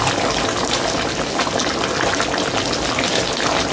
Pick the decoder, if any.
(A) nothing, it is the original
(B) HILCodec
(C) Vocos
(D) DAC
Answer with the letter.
A